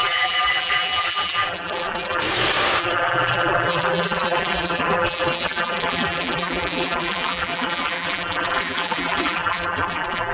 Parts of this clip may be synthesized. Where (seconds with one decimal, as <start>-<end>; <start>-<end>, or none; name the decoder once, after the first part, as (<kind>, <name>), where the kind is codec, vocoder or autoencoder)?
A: 0.0-2.2 (vocoder, BigVGAN v2); 2.8-10.3